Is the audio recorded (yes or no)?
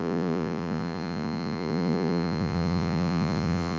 no